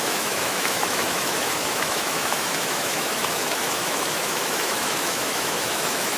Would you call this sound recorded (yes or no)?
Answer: no